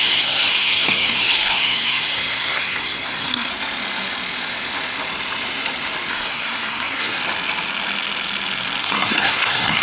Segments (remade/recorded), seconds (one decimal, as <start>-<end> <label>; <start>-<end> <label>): 0.0-3.5 remade; 3.5-6.1 recorded; 6.1-7.2 remade; 7.2-8.8 recorded; 8.8-9.8 remade